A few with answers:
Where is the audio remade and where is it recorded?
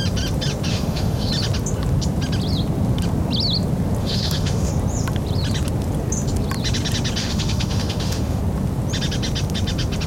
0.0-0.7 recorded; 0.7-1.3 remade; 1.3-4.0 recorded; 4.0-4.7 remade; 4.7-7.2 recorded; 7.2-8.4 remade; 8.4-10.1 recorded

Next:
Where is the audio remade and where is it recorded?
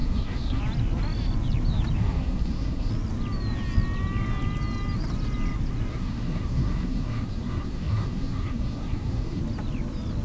0.0-0.6 remade; 0.6-2.0 recorded; 2.0-2.9 remade; 2.9-5.9 recorded; 5.9-9.4 remade; 9.4-10.2 recorded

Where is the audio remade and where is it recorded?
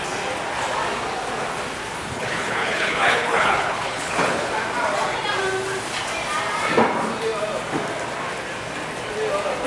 0.0-2.1 recorded; 2.1-4.5 remade; 4.5-9.7 recorded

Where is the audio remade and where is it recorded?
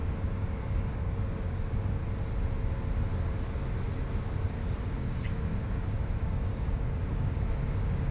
0.0-2.0 remade; 2.0-4.9 recorded; 4.9-8.1 remade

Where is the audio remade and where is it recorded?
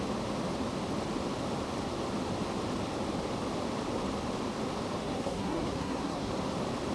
0.0-5.0 recorded; 5.0-6.3 remade; 6.3-6.9 recorded